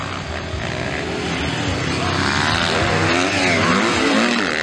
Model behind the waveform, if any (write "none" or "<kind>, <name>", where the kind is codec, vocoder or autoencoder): none